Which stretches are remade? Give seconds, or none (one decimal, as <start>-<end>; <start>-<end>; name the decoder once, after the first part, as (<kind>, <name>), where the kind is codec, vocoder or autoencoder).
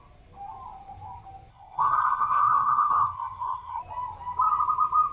1.5-3.8 (codec, SNAC)